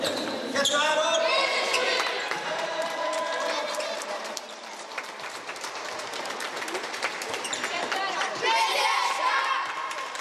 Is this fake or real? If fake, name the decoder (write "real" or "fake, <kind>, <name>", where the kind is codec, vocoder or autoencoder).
fake, vocoder, BigVGAN v2